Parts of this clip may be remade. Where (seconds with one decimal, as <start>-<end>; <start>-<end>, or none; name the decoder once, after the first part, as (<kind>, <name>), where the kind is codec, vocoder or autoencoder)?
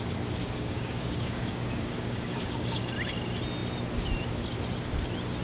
0.4-2.8 (codec, DAC)